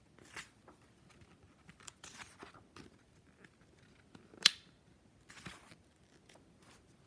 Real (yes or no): yes